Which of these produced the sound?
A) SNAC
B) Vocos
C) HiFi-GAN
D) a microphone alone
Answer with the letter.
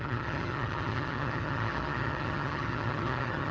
C